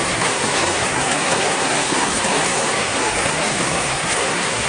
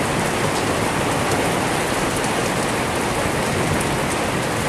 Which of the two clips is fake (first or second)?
first